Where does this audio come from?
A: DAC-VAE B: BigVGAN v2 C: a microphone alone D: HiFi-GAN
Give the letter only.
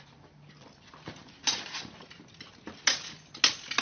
C